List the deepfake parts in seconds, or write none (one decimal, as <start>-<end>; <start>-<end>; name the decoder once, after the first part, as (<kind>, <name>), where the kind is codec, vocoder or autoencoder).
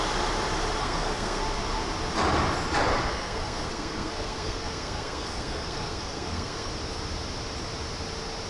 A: 0.8-1.4 (codec, SNAC); 3.1-6.7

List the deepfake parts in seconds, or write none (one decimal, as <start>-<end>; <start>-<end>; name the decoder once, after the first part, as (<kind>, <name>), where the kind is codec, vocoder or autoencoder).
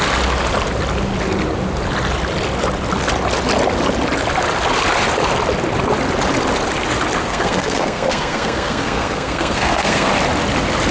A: 7.2-10.1 (codec, SNAC)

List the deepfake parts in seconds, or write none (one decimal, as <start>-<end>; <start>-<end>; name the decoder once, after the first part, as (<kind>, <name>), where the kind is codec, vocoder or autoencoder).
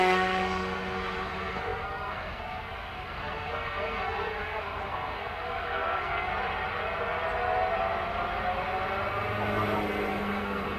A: 0.0-6.3 (codec, SNAC); 10.1-10.8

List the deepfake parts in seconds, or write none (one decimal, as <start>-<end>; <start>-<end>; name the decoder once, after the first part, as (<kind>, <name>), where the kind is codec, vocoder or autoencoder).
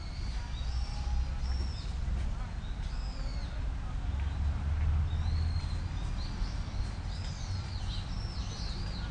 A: none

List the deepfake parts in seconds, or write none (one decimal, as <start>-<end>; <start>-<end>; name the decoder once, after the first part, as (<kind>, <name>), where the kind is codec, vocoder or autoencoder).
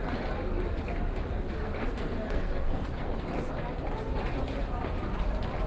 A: 1.6-3.5 (codec, SNAC)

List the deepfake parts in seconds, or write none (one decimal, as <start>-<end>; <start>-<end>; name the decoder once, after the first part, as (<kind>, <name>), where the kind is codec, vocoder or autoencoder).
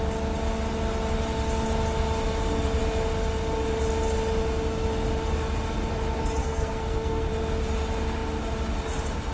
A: 6.4-7.3 (codec, SNAC)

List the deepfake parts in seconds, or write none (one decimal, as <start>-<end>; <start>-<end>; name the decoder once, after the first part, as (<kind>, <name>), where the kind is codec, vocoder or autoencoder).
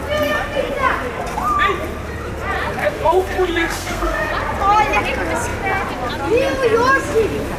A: 2.8-4.3 (codec, SNAC)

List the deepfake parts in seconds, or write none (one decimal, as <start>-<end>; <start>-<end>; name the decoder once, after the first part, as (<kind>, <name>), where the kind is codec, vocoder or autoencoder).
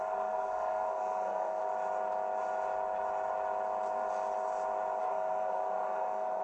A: 0.0-1.6 (codec, SNAC); 5.0-6.4